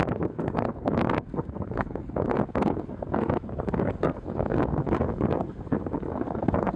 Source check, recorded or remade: remade